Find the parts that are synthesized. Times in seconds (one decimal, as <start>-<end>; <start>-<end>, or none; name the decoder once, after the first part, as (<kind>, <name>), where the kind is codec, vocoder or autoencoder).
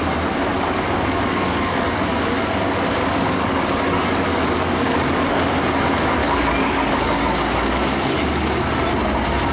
0.5-5.5 (codec, DAC); 6.2-8.7